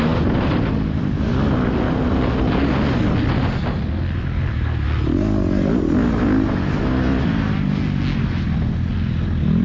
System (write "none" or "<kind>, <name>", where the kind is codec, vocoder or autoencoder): none